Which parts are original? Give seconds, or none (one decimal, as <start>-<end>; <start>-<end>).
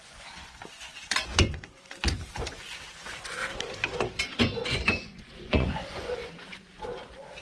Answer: 3.4-4.4